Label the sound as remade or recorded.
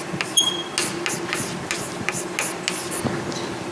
recorded